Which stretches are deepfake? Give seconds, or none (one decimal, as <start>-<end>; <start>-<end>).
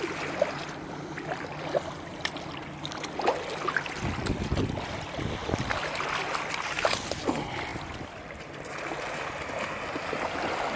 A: none